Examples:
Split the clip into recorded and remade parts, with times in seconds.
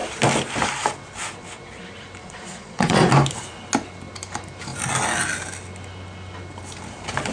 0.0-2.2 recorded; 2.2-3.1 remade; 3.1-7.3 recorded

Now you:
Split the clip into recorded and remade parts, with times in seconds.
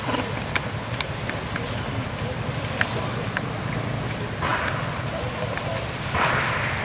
0.0-5.7 recorded; 5.7-6.2 remade; 6.2-6.8 recorded